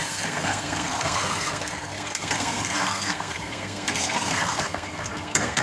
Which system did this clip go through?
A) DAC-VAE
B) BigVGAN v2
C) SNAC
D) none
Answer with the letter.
C